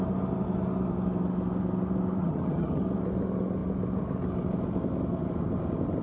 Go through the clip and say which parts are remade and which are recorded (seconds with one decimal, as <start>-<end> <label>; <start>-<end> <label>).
0.0-2.2 recorded; 2.2-2.8 remade; 2.8-6.0 recorded